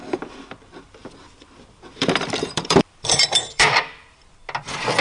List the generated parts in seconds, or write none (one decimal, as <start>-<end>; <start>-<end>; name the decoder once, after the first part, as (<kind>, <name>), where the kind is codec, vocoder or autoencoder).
1.0-3.8 (vocoder, BigVGAN v2)